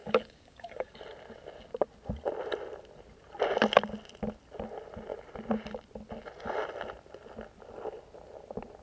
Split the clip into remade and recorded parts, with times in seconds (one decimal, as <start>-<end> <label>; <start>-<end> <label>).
0.0-1.0 remade; 1.0-8.8 recorded